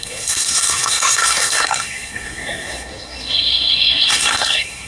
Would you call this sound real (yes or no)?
no